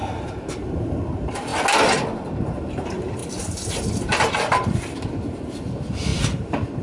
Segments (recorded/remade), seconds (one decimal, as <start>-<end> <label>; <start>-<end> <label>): 0.0-0.7 recorded; 0.7-1.5 remade; 1.5-2.4 recorded; 2.4-6.8 remade